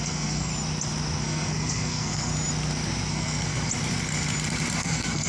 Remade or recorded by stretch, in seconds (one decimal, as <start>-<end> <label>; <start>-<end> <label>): 0.0-0.5 remade; 0.5-1.2 recorded; 1.2-2.3 remade; 2.3-3.1 recorded; 3.1-3.7 remade; 3.7-4.8 recorded; 4.8-5.3 remade